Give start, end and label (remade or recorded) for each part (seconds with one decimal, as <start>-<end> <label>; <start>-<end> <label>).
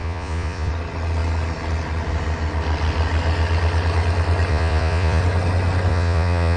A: 0.0-0.7 remade; 0.7-4.5 recorded; 4.5-5.2 remade; 5.2-5.9 recorded; 5.9-6.6 remade